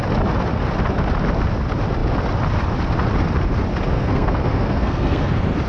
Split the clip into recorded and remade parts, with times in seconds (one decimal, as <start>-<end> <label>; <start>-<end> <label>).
0.0-3.9 recorded; 3.9-5.3 remade; 5.3-5.7 recorded